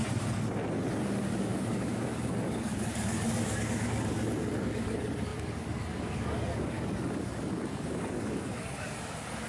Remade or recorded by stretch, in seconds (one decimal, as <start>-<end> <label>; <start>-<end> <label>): 0.0-1.0 recorded; 1.0-9.5 remade